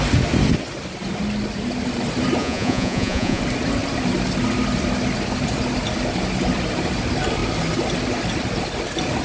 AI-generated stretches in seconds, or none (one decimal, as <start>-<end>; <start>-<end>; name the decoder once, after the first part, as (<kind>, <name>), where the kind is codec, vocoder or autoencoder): 2.4-3.4 (vocoder, Vocos)